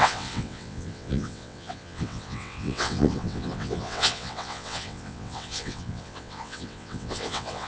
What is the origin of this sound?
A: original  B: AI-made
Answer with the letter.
B